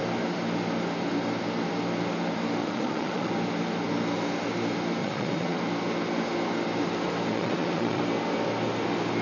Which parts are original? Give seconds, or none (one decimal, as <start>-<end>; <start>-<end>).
0.0-2.6; 3.3-5.0; 5.6-7.3; 8.0-9.2